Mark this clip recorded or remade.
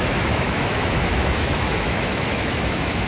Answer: remade